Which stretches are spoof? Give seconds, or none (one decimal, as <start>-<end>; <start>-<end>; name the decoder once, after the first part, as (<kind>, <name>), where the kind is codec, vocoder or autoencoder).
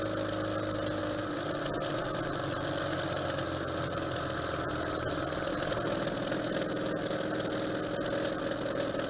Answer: none